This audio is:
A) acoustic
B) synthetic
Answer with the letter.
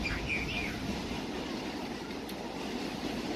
A